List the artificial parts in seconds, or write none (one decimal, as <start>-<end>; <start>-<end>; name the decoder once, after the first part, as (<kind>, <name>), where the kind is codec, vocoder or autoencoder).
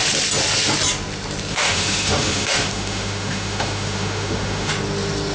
1.5-4.7 (autoencoder, DAC-VAE)